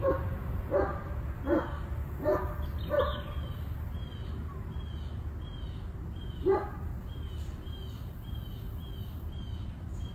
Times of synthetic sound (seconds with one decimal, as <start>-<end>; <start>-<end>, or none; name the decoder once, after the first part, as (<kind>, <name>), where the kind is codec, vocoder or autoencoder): none